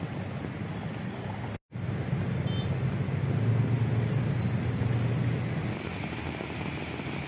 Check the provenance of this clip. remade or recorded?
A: recorded